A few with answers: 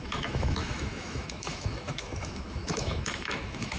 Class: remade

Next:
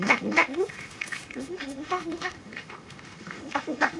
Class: remade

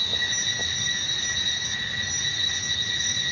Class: recorded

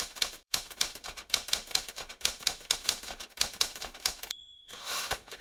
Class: remade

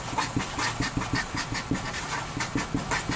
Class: recorded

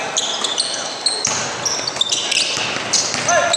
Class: recorded